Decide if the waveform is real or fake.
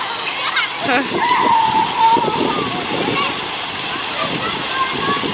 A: real